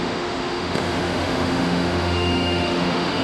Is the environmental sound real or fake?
fake